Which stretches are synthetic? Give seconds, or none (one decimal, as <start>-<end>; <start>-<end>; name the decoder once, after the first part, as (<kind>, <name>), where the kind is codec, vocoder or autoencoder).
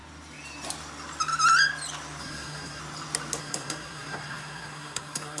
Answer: 2.2-2.8 (codec, SNAC); 3.4-5.4